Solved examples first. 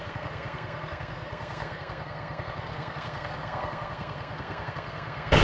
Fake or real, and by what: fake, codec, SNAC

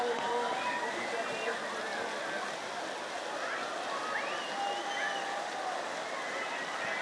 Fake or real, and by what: real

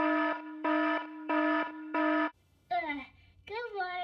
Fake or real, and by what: fake, autoencoder, DAC-VAE